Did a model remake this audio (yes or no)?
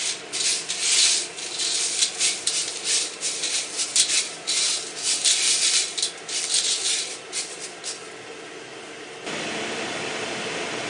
yes